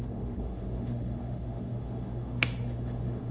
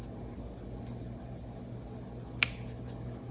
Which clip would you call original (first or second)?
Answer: second